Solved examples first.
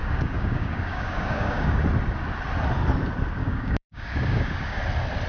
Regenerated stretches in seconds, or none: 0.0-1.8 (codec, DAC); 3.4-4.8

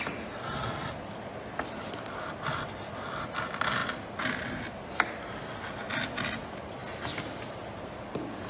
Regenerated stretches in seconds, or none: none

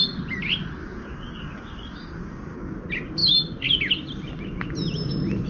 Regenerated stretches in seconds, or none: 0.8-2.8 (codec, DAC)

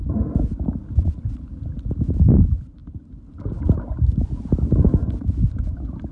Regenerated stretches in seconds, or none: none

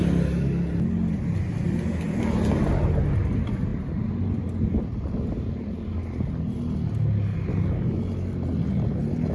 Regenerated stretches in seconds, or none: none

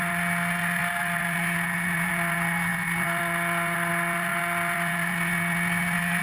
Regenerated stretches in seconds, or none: none

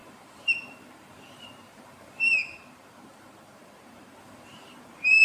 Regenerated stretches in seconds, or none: 0.0-5.2 (vocoder, BigVGAN v2)